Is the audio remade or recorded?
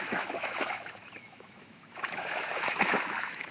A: remade